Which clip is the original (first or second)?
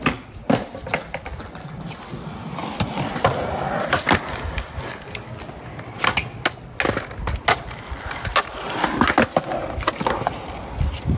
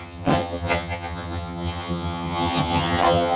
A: first